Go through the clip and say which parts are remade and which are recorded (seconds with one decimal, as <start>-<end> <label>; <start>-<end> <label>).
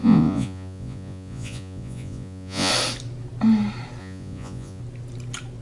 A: 0.0-2.7 remade; 2.7-4.0 recorded; 4.0-4.8 remade; 4.8-5.6 recorded